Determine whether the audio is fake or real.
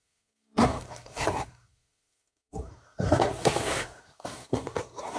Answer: fake